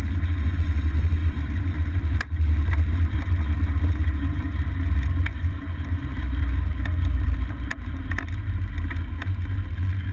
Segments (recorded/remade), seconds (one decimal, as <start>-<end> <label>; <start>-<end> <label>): 0.0-1.2 recorded; 1.2-3.2 remade; 3.2-5.3 recorded; 5.3-8.1 remade; 8.1-10.1 recorded